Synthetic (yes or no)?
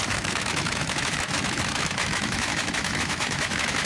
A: yes